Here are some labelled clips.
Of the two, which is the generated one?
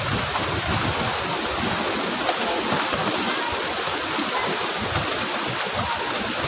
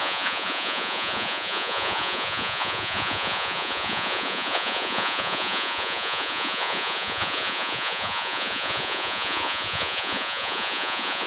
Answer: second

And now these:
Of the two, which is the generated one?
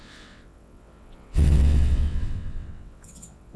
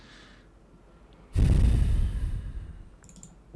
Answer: first